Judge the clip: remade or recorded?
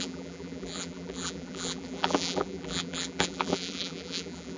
remade